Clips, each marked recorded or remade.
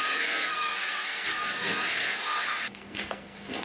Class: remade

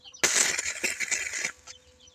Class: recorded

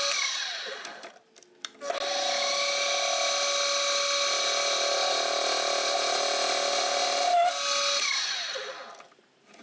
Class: recorded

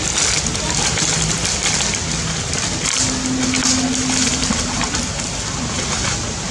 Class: recorded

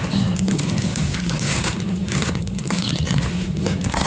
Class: remade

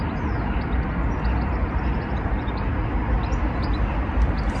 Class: recorded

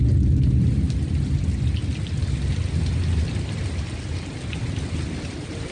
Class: recorded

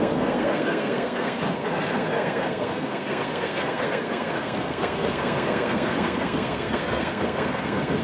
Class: remade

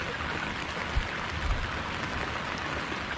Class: recorded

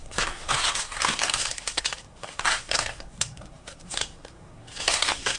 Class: remade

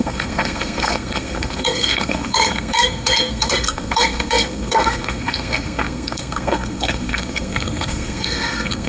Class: remade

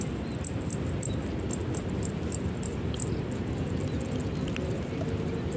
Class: recorded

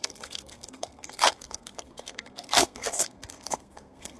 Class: remade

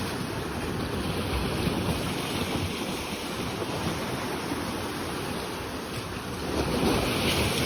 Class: recorded